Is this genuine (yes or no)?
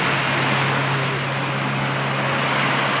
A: yes